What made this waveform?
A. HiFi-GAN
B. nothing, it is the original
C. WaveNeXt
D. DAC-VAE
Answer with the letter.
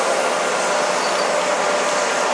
B